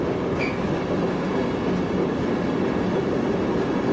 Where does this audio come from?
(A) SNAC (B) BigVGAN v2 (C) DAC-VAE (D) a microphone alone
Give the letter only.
D